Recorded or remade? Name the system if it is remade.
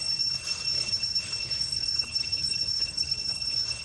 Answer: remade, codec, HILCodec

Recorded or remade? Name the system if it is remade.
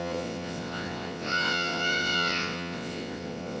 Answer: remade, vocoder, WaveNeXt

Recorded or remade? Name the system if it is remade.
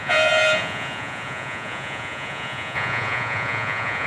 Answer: remade, vocoder, Vocos